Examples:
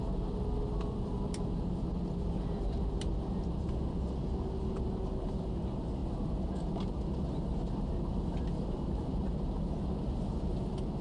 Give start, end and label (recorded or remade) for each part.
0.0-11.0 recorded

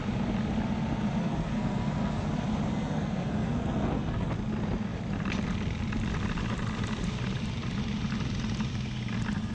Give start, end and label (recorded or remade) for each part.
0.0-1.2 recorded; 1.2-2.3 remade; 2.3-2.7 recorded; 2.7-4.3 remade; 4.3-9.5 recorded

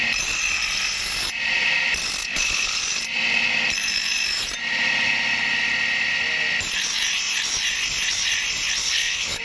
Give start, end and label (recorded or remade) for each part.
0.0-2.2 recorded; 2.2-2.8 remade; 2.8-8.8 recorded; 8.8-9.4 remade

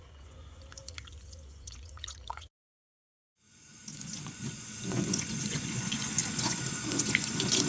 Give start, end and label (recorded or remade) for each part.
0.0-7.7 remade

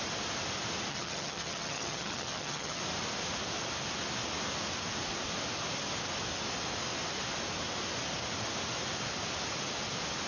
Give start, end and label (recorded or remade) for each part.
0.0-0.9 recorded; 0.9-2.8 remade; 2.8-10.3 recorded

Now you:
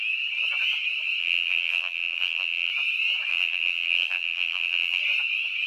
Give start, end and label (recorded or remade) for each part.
0.0-1.2 recorded; 1.2-2.7 remade; 2.7-3.3 recorded; 3.3-5.0 remade; 5.0-5.7 recorded

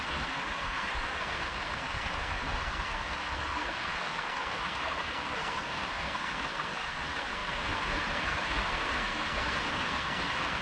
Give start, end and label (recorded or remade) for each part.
0.0-10.6 remade

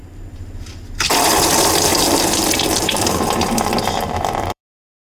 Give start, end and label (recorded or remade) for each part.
0.0-0.6 remade; 0.6-1.9 recorded; 1.9-4.6 remade; 4.6-5.0 recorded